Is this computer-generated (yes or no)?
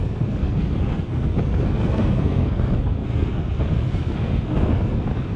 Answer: yes